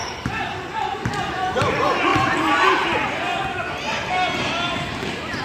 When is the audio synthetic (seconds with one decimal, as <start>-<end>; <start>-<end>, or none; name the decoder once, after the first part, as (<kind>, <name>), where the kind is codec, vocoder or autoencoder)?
0.0-1.1 (vocoder, BigVGAN v2)